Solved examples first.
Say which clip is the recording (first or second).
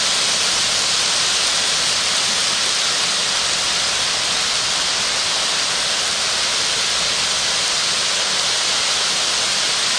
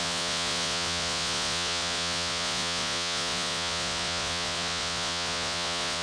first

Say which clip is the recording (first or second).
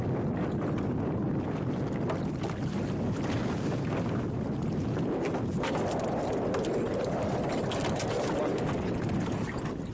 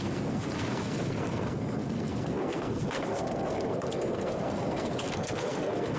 first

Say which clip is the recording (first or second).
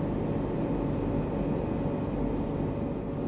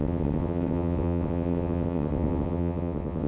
first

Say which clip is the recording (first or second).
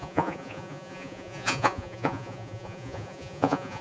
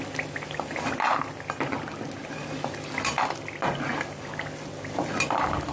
second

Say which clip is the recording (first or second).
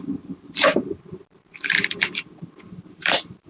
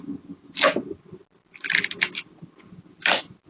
second